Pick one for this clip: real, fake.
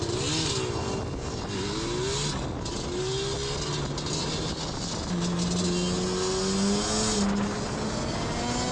real